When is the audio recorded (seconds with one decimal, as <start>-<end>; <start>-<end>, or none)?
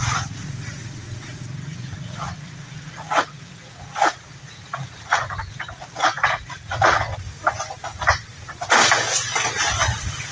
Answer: 7.1-9.9